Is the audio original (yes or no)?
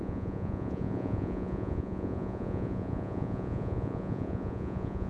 no